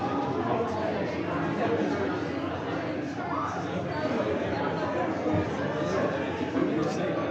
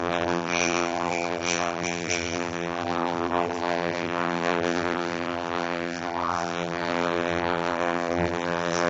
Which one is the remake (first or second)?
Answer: second